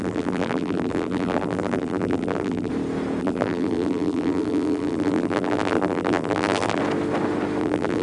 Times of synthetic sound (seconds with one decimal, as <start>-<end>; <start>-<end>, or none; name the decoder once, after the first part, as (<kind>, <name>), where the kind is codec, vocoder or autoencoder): 0.0-2.7 (vocoder, BigVGAN v2); 3.2-6.8; 7.6-8.0